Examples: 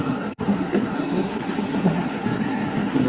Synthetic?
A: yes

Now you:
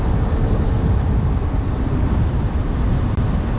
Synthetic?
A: no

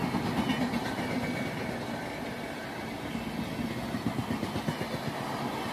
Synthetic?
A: no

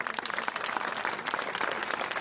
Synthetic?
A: no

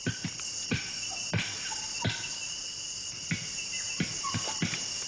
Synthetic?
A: no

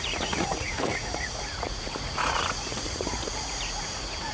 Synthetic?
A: yes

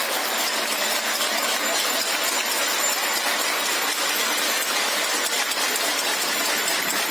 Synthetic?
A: no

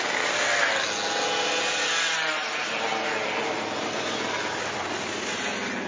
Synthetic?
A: no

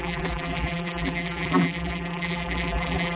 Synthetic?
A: yes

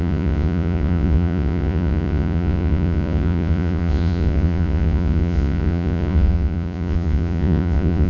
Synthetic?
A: yes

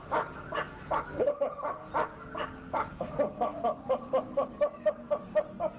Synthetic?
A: no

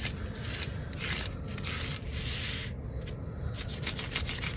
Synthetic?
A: no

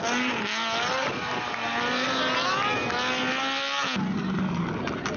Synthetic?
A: no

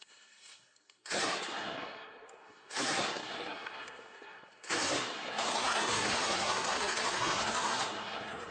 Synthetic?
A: yes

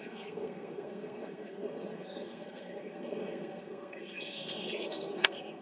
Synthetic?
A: yes